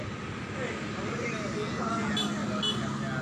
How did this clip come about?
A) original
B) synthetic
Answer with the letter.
A